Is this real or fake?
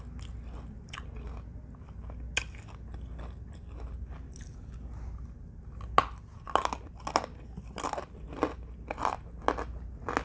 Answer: real